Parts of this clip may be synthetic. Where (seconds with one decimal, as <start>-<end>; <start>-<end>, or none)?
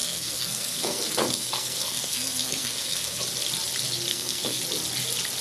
0.0-3.2; 4.1-4.6